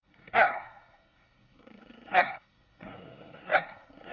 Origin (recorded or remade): remade